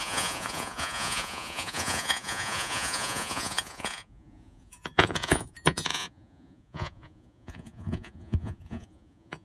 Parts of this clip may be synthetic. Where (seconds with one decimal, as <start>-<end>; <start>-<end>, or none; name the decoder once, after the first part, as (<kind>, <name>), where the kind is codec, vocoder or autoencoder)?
0.0-9.4 (vocoder, Vocos)